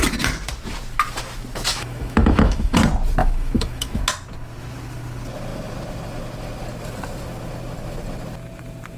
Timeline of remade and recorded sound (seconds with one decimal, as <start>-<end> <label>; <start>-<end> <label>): 0.0-1.7 recorded; 1.7-2.8 remade; 2.8-3.2 recorded; 3.2-4.0 remade; 4.0-9.0 recorded